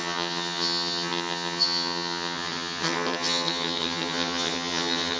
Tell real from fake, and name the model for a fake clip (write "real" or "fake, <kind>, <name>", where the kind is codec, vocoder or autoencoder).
fake, vocoder, HiFi-GAN